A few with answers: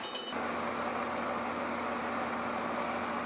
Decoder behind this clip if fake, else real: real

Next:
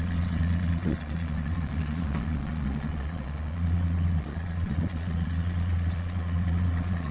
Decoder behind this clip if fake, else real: fake, vocoder, Vocos